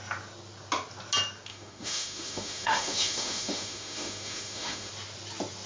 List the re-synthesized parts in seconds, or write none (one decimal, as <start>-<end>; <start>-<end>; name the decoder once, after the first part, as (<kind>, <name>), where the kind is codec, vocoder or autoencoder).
1.5-4.9 (autoencoder, DAC-VAE)